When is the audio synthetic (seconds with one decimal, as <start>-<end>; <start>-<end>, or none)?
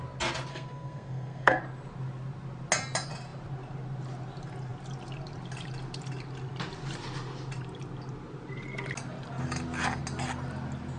0.5-1.6